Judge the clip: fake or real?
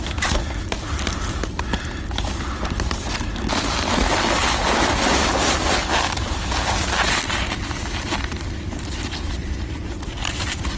real